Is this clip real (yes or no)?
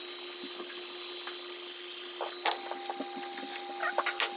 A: yes